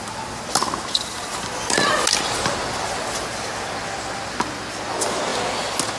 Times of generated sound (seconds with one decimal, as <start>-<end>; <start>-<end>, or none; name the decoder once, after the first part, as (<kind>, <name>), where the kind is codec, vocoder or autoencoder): none